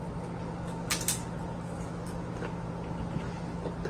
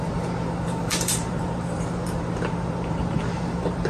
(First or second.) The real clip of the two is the first